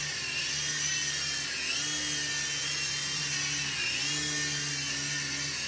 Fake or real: real